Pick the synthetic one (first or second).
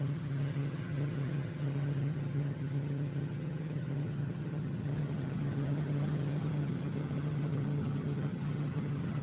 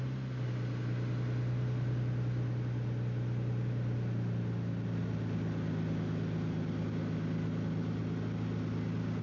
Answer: first